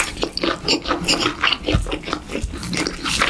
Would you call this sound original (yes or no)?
yes